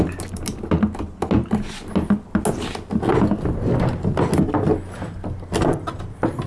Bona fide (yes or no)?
yes